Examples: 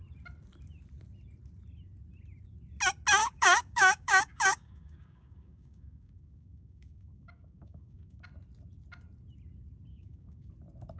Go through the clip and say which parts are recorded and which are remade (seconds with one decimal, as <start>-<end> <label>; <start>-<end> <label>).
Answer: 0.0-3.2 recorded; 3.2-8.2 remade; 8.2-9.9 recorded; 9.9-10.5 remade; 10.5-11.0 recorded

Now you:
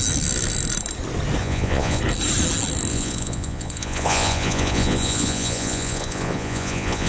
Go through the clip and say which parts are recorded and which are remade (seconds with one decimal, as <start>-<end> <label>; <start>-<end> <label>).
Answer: 0.0-1.4 recorded; 1.4-2.0 remade; 2.0-2.9 recorded; 2.9-7.1 remade

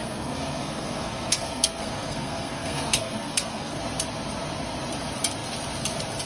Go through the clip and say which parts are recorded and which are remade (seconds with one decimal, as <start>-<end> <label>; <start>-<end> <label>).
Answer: 0.0-3.8 remade; 3.8-6.3 recorded

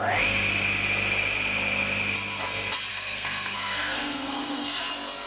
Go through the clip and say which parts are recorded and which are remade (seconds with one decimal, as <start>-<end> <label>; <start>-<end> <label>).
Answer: 0.0-2.9 recorded; 2.9-4.8 remade; 4.8-5.3 recorded

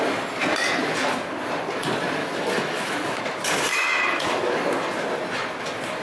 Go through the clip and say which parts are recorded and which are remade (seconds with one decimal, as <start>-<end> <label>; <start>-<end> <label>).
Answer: 0.0-2.2 recorded; 2.2-3.2 remade; 3.2-3.7 recorded; 3.7-4.4 remade; 4.4-6.0 recorded

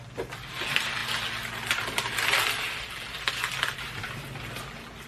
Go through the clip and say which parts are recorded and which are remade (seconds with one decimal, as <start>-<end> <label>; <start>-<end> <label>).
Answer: 0.0-5.1 recorded

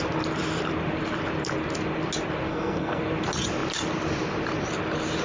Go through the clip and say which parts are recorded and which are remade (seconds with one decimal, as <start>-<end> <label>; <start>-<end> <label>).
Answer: 0.0-2.5 recorded; 2.5-3.0 remade; 3.0-5.2 recorded

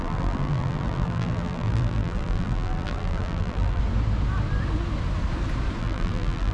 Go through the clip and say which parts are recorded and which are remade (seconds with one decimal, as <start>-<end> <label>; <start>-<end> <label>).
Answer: 0.0-3.8 remade; 3.8-5.8 recorded; 5.8-6.5 remade